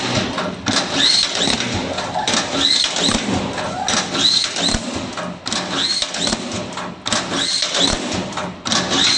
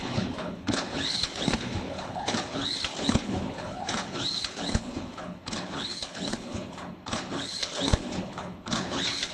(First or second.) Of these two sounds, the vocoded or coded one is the second